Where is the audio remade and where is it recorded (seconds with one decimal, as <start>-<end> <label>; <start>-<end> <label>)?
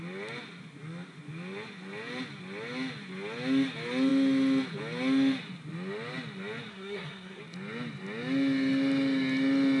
0.0-6.7 recorded; 6.7-7.4 remade; 7.4-9.8 recorded